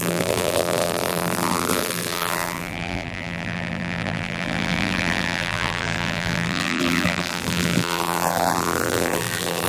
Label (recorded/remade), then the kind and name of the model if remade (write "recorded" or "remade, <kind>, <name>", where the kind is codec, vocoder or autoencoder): remade, vocoder, BigVGAN v2